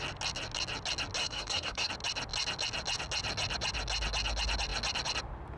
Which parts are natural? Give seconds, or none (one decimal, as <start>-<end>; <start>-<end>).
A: 0.0-1.2; 1.9-5.6